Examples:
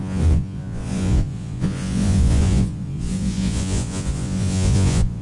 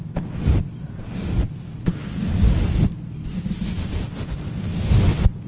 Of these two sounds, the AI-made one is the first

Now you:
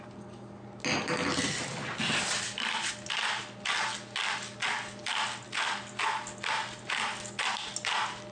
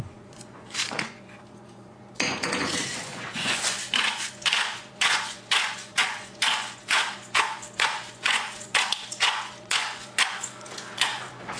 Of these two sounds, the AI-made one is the second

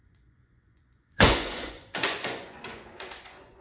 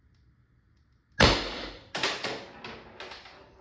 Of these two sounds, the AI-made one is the first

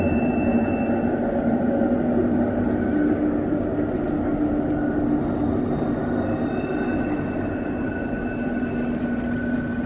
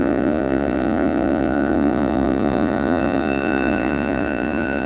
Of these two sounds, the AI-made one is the second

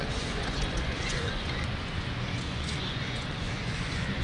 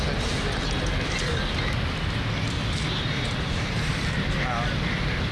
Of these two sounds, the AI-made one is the first